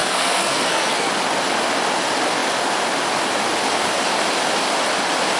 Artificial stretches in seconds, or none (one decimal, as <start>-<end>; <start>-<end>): 0.0-1.1